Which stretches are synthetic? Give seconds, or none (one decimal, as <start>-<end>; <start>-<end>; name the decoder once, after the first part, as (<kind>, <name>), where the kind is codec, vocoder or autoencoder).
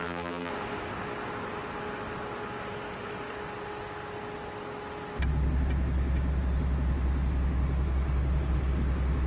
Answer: 0.0-0.5 (vocoder, BigVGAN v2)